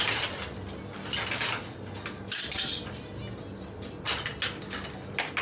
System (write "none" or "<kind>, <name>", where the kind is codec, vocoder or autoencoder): none